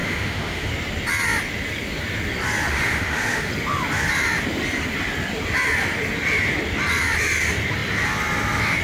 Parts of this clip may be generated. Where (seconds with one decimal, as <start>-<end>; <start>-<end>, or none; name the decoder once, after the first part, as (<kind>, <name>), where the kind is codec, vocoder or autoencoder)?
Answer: 0.0-0.7 (autoencoder, DAC-VAE); 2.7-3.5